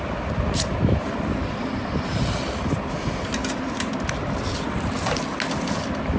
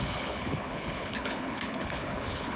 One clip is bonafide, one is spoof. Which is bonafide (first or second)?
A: first